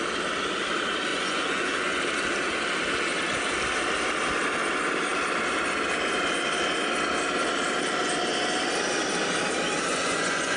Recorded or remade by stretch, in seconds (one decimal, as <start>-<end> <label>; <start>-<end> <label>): 0.0-1.1 recorded; 1.1-2.0 remade; 2.0-9.9 recorded; 9.9-10.6 remade